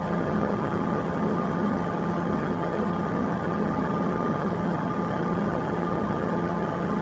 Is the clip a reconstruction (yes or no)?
yes